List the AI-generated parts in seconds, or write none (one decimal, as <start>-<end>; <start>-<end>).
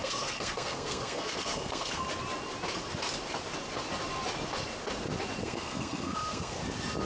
0.0-2.0; 5.4-6.6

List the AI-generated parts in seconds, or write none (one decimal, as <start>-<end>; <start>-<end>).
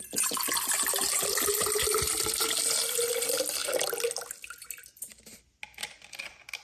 none